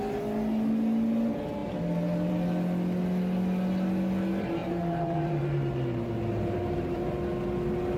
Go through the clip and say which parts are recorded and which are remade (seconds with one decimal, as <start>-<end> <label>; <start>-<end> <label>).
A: 0.0-4.6 recorded; 4.6-7.3 remade; 7.3-8.0 recorded